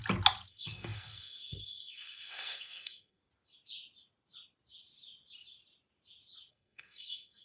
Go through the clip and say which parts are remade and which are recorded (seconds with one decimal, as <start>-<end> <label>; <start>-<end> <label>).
0.0-0.5 recorded; 0.5-3.2 remade; 3.2-6.5 recorded; 6.5-7.4 remade

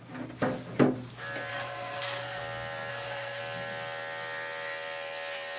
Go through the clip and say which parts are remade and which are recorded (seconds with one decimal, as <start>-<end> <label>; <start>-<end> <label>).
0.0-1.5 recorded; 1.5-2.4 remade; 2.4-2.9 recorded; 2.9-3.4 remade; 3.4-5.6 recorded